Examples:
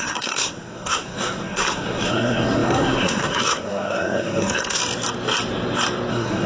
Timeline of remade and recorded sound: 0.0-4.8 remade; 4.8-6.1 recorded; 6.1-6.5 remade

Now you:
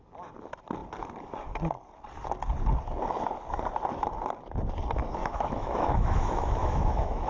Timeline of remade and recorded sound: 0.0-5.2 recorded; 5.2-7.3 remade